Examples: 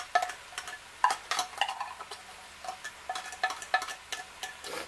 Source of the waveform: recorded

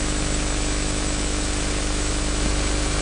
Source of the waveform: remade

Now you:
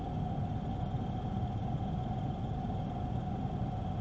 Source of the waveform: recorded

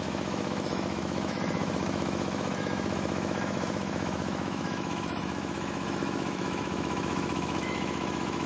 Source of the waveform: remade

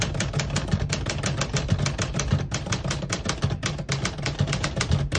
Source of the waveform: recorded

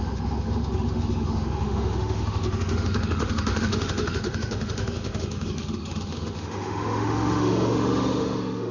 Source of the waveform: remade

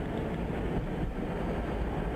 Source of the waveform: recorded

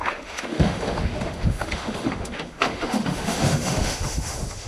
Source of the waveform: remade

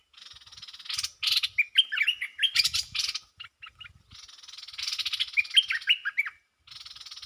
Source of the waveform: recorded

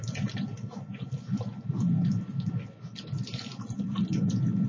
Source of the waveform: recorded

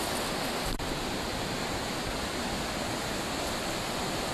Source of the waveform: recorded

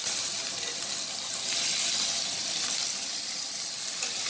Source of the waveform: recorded